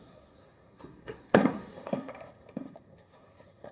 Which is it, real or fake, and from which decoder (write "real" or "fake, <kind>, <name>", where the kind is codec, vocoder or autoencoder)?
fake, codec, SNAC